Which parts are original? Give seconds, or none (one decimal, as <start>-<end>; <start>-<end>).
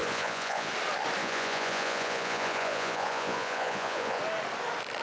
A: 0.7-1.2; 4.2-5.0